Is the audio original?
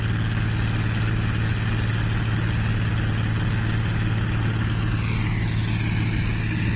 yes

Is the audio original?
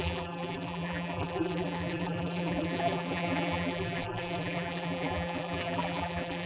no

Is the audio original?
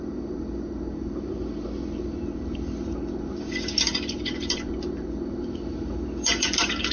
no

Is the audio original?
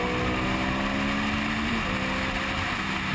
yes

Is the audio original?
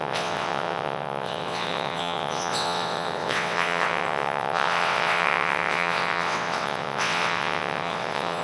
no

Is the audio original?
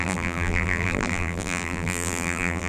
no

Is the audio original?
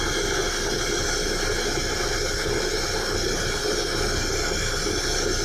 yes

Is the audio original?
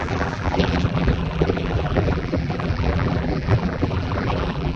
no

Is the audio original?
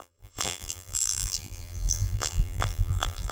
no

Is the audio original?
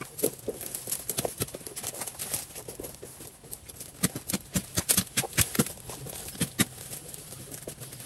yes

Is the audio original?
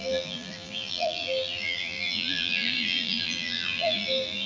no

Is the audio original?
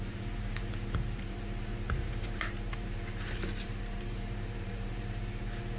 no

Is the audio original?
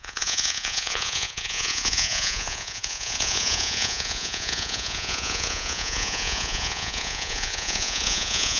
no